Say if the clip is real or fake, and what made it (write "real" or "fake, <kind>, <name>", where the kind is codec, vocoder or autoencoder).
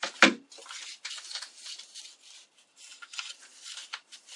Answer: real